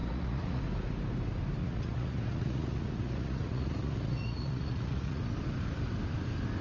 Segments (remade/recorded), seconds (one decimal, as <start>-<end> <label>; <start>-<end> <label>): 0.0-0.6 remade; 0.6-1.6 recorded; 1.6-5.2 remade; 5.2-6.6 recorded